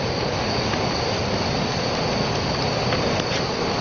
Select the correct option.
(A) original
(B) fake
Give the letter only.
A